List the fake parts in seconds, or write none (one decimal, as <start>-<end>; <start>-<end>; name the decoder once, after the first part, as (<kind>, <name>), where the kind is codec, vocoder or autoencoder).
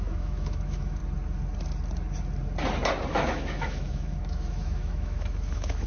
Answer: 0.0-1.0 (autoencoder, DAC-VAE); 3.1-5.9